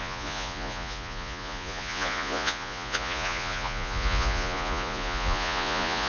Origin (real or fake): fake